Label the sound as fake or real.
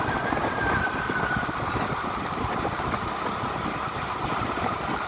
real